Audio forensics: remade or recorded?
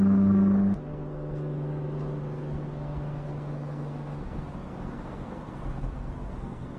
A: remade